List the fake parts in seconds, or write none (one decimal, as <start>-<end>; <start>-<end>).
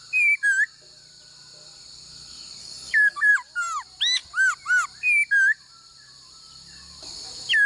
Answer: 2.6-3.3